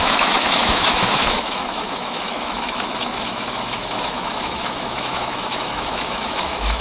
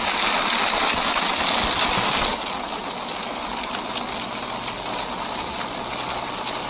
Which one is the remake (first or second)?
first